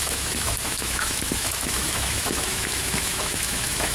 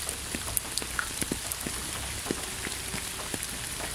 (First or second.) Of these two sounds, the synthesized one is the first